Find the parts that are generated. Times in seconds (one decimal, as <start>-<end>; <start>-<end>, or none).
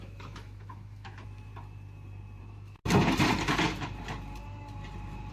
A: 0.0-1.5; 2.4-2.8